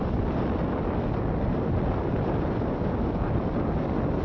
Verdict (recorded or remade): recorded